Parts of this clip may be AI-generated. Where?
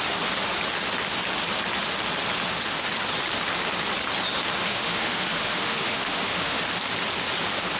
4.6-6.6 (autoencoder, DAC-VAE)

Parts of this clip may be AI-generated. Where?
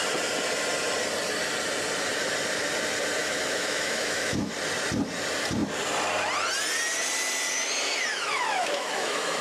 3.2-4.5 (autoencoder, DAC-VAE); 8.1-9.4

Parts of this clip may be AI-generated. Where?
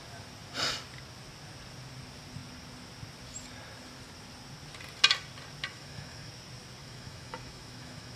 5.7-6.3 (autoencoder, DAC-VAE); 6.8-8.2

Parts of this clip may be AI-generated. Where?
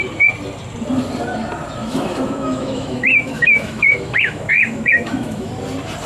1.8-5.5 (autoencoder, DAC-VAE)